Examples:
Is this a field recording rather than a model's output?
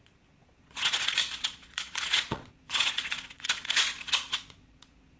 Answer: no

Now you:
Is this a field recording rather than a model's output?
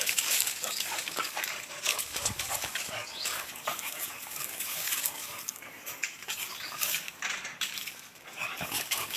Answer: no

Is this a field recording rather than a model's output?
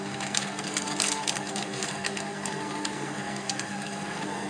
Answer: no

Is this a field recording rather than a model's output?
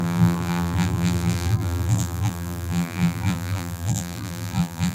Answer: no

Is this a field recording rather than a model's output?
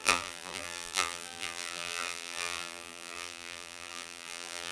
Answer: no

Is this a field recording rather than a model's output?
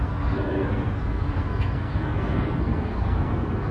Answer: no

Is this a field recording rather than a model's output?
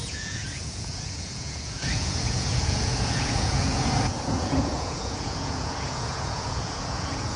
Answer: no